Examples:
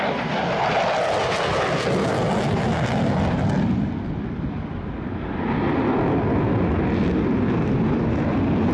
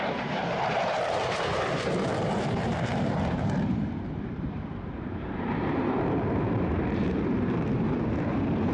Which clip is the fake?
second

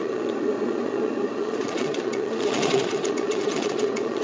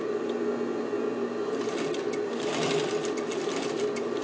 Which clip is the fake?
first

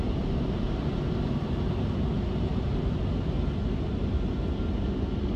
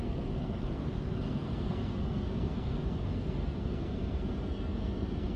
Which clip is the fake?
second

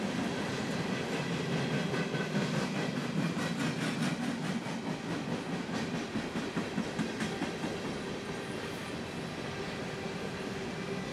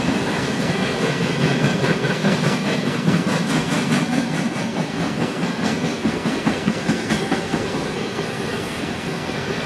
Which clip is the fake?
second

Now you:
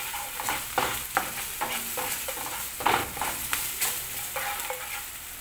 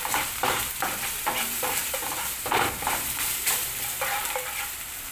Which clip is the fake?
second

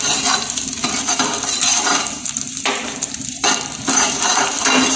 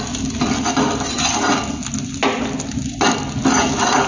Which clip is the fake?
first